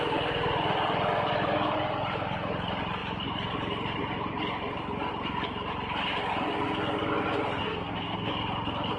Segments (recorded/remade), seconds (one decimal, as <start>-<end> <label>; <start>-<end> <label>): 0.0-7.6 recorded; 7.6-8.3 remade; 8.3-9.0 recorded